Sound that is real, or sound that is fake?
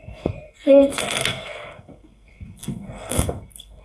fake